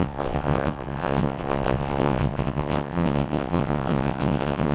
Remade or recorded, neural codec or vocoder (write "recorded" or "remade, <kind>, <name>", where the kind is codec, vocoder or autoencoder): remade, vocoder, WaveNeXt